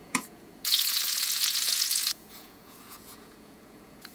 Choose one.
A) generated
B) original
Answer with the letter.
A